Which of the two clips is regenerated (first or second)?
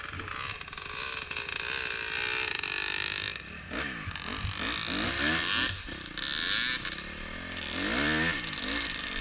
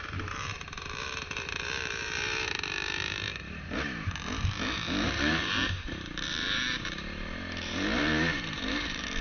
second